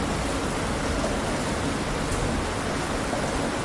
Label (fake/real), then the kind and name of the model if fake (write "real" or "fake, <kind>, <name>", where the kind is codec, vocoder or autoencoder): real